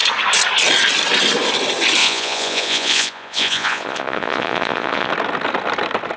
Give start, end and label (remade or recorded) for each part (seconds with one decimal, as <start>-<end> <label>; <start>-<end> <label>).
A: 0.0-2.0 recorded; 2.0-5.1 remade; 5.1-6.2 recorded